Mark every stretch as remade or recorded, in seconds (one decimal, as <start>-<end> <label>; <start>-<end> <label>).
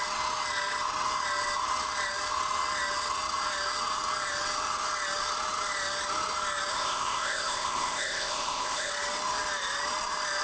0.0-6.7 recorded; 6.7-8.9 remade; 8.9-10.4 recorded